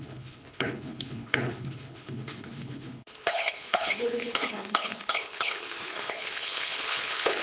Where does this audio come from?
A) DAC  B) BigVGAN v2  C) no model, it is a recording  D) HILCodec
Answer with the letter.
D